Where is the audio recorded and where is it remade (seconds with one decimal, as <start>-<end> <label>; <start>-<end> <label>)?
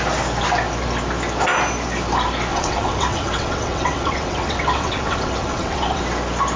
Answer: 0.0-2.5 recorded; 2.5-6.0 remade; 6.0-6.6 recorded